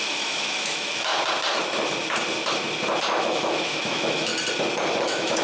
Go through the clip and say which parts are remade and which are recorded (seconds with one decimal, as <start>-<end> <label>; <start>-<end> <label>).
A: 0.0-1.1 remade; 1.1-3.2 recorded; 3.2-4.3 remade; 4.3-5.0 recorded; 5.0-5.4 remade